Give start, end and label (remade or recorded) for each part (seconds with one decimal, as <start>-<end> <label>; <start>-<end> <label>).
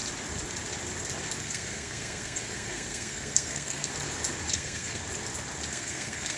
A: 0.0-1.4 recorded; 1.4-3.9 remade; 3.9-4.5 recorded; 4.5-5.0 remade; 5.0-5.7 recorded; 5.7-6.4 remade